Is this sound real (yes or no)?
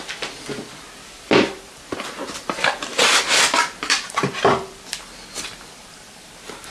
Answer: no